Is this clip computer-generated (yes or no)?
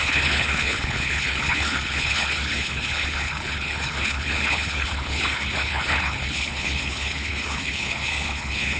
yes